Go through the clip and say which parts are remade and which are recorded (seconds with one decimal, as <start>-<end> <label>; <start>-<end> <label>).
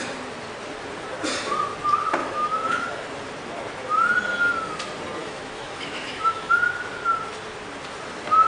0.0-2.2 recorded; 2.2-3.1 remade; 3.1-5.2 recorded; 5.2-6.6 remade; 6.6-8.5 recorded